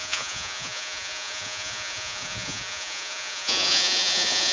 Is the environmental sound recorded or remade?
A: remade